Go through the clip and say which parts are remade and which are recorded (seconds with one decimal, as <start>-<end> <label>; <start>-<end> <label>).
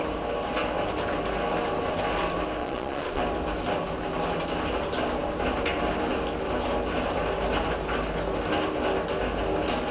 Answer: 0.0-2.6 recorded; 2.6-3.2 remade; 3.2-9.9 recorded